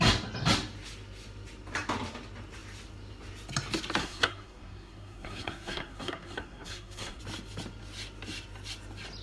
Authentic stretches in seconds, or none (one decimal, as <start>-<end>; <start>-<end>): 0.0-4.0; 7.2-9.2